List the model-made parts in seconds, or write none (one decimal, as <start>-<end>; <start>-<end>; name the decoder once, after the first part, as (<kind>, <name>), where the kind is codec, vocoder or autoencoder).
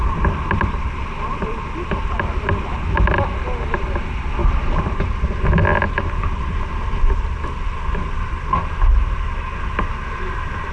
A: none